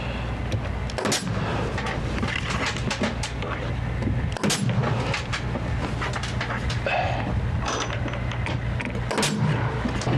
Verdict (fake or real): real